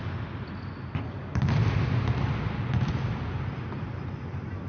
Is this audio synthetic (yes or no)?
no